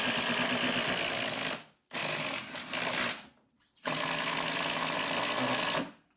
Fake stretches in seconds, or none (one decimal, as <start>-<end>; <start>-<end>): none